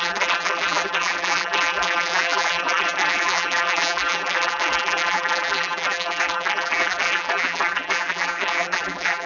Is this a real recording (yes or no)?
no